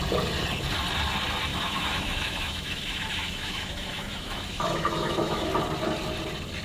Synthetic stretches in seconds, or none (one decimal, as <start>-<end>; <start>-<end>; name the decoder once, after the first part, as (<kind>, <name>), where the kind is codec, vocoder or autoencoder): 1.5-5.5 (autoencoder, DAC-VAE)